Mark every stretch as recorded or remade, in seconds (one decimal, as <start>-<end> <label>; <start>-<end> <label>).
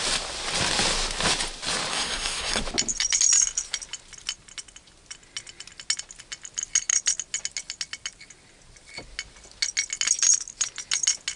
0.0-1.9 recorded; 1.9-2.6 remade; 2.6-11.4 recorded